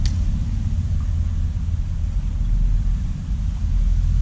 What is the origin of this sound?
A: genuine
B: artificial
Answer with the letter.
A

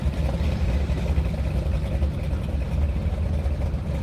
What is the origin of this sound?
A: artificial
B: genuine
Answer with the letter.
B